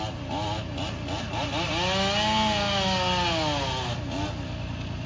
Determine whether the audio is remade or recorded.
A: recorded